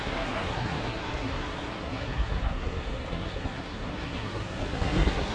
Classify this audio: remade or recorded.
remade